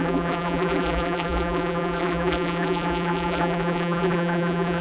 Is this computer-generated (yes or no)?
yes